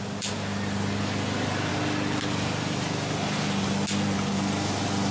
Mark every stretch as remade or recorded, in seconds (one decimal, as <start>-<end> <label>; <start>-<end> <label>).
0.0-5.1 recorded

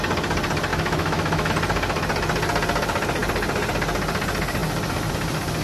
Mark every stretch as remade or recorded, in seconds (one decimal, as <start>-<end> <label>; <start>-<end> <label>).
0.0-0.7 recorded; 0.7-1.5 remade; 1.5-5.6 recorded

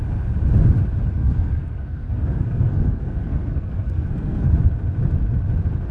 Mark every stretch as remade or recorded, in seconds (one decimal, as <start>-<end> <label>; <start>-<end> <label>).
0.0-1.2 recorded; 1.2-4.5 remade; 4.5-5.9 recorded

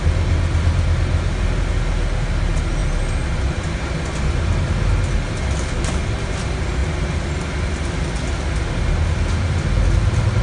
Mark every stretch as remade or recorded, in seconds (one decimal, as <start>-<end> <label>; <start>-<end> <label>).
0.0-10.4 recorded